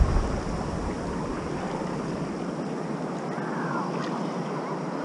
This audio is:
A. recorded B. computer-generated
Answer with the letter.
A